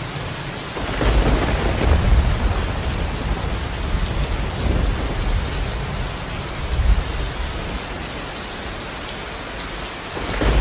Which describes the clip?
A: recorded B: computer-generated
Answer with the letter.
A